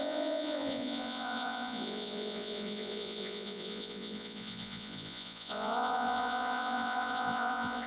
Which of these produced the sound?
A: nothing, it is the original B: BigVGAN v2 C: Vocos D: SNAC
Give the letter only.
C